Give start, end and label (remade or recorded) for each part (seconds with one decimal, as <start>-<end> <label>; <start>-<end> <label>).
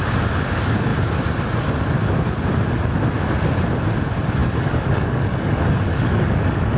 0.0-4.4 recorded; 4.4-6.8 remade